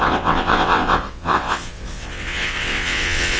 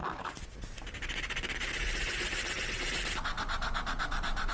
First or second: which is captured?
second